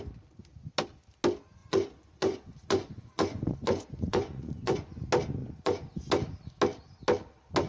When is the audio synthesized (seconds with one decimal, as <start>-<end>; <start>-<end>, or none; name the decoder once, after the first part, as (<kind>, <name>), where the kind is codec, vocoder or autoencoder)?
1.6-5.0 (vocoder, Vocos); 5.4-6.1

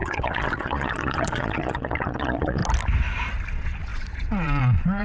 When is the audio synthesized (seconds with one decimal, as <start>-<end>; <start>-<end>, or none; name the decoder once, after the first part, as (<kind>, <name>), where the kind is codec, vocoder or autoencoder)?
0.0-2.6 (vocoder, Vocos); 3.5-5.0

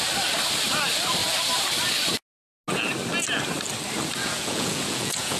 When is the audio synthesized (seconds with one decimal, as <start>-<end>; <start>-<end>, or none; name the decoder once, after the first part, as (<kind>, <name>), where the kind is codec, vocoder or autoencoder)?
4.2-5.4 (vocoder, Vocos)

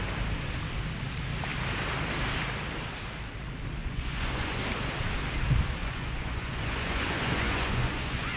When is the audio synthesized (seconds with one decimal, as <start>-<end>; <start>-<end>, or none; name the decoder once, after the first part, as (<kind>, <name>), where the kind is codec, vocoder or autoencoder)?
3.8-4.6 (vocoder, Vocos); 5.8-8.4

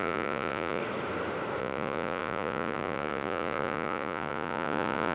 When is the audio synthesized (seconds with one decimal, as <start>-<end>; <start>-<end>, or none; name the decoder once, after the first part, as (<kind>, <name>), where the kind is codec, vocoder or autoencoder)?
0.0-0.8 (vocoder, Vocos); 1.6-5.1